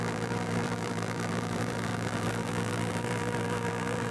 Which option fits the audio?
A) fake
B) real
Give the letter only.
A